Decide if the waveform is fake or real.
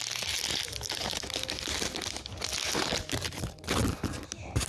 real